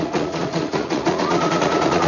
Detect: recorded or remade remade